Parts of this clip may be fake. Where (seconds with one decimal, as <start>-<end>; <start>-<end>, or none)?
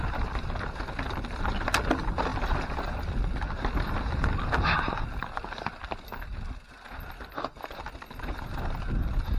none